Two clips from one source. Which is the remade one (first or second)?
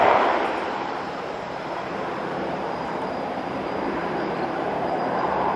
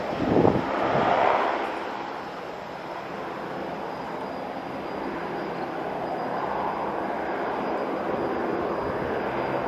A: first